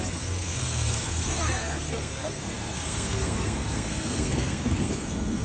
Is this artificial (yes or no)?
yes